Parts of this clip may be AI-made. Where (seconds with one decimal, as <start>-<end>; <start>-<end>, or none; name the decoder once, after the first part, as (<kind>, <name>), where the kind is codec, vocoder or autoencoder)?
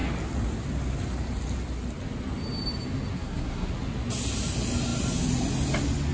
3.1-3.7 (codec, SNAC)